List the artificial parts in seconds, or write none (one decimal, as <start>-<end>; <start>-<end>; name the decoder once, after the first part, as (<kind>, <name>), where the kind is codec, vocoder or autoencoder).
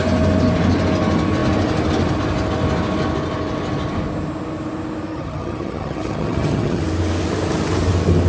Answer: 5.1-6.8 (vocoder, HiFi-GAN)